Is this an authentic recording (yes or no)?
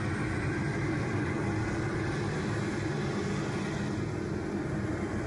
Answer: yes